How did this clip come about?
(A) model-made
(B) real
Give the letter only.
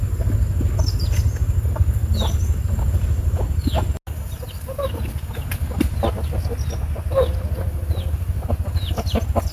B